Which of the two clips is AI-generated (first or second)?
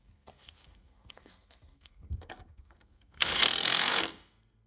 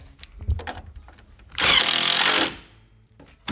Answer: first